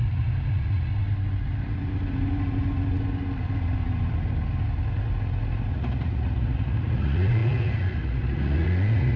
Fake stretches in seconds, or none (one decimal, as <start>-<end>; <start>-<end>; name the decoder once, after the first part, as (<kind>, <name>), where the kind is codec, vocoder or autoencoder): 0.0-0.9 (vocoder, Vocos); 5.7-9.2